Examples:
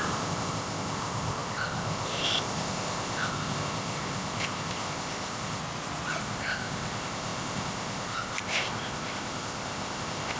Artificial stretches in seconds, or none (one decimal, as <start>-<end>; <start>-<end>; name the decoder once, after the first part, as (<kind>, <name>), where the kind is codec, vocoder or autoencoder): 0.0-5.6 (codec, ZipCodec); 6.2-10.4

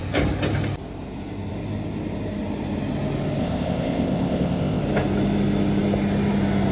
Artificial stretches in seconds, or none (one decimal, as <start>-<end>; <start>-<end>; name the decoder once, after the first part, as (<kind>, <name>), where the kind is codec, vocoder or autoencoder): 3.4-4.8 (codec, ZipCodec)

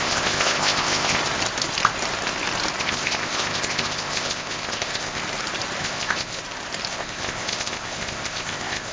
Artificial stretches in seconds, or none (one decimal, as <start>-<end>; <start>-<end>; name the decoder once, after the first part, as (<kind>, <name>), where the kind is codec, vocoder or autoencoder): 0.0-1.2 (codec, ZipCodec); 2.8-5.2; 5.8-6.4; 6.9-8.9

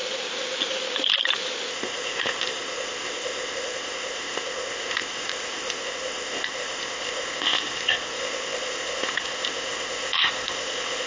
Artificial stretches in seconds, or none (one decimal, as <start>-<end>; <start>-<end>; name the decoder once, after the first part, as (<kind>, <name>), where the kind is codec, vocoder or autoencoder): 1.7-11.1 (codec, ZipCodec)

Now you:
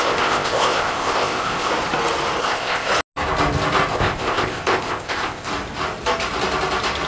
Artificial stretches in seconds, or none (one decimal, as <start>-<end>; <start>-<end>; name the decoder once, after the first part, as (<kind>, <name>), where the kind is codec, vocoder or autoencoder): 0.0-1.7 (codec, ZipCodec); 2.4-2.9; 3.9-5.5

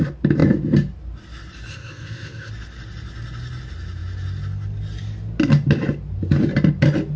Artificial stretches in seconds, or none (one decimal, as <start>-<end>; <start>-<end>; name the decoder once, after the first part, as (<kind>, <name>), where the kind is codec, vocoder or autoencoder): 1.7-2.5 (codec, ZipCodec)

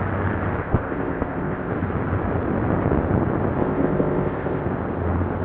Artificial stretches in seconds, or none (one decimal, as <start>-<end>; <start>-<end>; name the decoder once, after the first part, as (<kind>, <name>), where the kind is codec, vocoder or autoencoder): 0.6-1.7 (codec, ZipCodec); 3.6-4.6

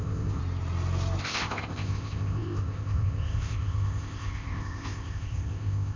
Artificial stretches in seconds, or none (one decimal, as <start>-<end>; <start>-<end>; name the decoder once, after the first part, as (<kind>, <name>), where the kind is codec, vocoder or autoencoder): 0.0-0.4 (codec, ZipCodec); 1.2-6.0